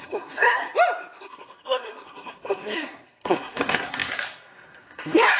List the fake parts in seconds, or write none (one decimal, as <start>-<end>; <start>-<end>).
0.0-0.6; 1.2-5.4